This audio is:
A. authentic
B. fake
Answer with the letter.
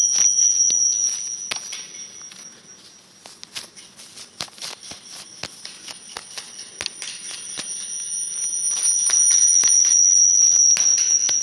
A